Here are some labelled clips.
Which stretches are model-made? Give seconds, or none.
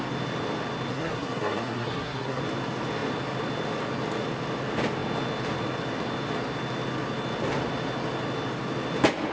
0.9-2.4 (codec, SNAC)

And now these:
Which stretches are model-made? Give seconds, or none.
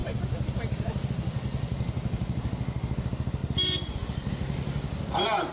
none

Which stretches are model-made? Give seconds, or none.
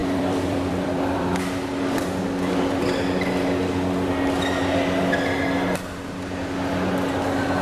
0.0-1.4 (vocoder, BigVGAN v2)